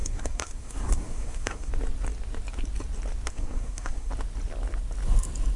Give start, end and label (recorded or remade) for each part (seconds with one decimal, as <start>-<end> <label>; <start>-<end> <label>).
0.0-1.7 remade; 1.7-3.3 recorded; 3.3-4.1 remade; 4.1-5.6 recorded